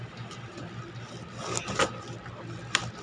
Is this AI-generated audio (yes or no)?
no